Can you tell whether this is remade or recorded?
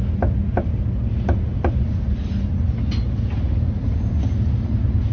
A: recorded